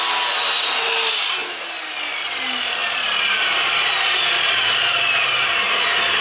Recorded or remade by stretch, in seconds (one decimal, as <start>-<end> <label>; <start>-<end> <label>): 0.0-6.2 recorded